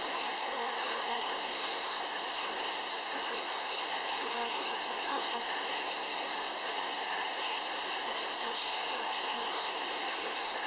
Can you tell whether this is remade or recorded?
remade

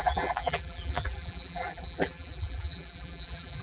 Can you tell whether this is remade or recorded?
remade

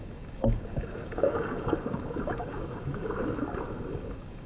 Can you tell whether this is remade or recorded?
remade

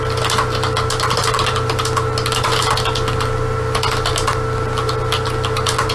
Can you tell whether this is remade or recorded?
recorded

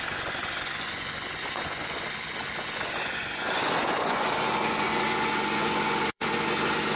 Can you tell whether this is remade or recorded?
remade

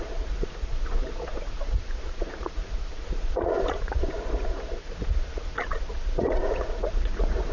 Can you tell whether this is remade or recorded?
remade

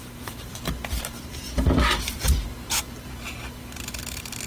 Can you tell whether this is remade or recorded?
remade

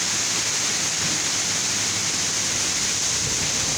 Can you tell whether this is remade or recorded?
recorded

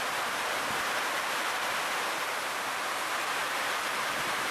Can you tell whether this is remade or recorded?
remade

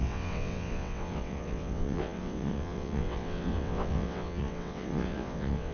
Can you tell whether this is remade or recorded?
remade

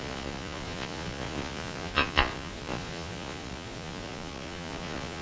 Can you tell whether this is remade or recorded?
remade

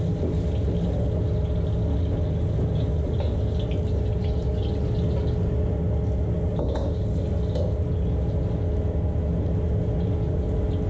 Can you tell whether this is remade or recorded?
recorded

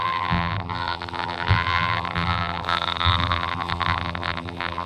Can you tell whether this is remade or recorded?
remade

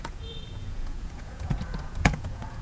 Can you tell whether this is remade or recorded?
remade